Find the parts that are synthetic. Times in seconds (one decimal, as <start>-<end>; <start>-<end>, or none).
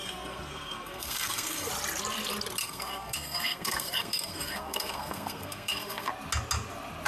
0.0-1.7; 2.6-6.1